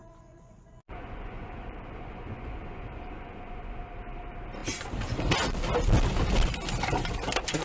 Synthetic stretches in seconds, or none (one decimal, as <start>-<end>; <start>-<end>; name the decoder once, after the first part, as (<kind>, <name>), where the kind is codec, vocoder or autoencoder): 0.0-3.8 (vocoder, Vocos)